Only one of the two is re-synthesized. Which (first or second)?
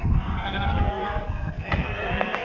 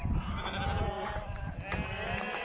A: first